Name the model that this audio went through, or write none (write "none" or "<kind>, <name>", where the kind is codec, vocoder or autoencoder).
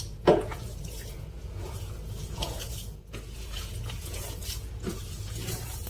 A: vocoder, Vocos